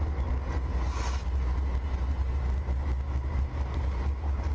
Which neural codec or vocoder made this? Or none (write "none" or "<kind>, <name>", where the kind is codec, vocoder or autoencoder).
none